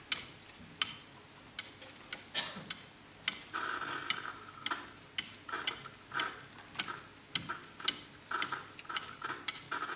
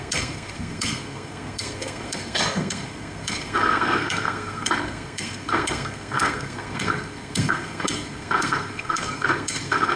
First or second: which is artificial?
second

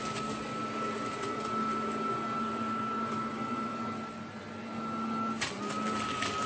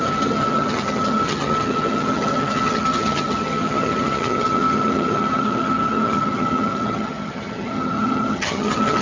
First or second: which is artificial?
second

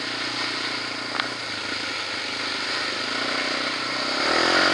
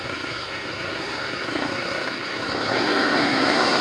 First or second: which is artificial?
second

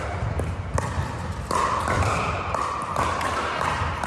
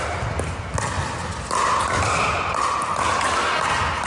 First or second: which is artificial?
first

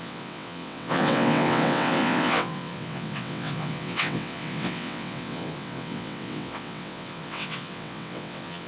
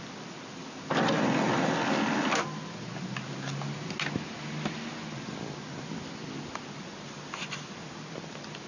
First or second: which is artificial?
first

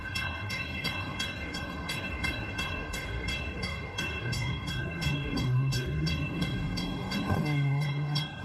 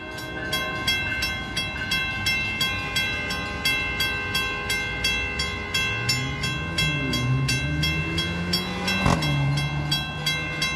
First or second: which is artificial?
first